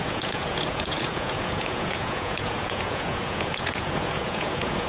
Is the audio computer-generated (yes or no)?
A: yes